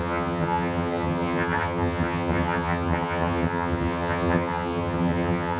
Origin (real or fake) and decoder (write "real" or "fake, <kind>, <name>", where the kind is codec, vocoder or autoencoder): fake, vocoder, HiFi-GAN